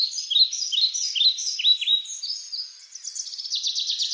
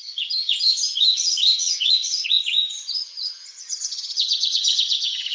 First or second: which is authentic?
first